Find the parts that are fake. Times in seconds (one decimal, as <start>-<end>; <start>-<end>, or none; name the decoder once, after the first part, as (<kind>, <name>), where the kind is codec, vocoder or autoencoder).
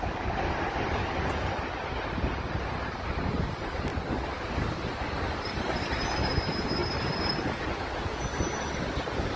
none